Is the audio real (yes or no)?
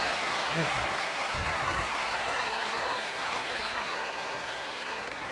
no